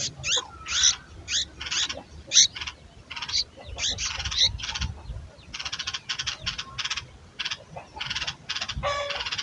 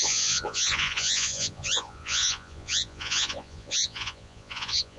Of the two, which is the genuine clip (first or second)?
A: first